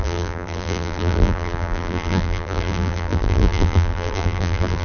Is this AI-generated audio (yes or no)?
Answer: yes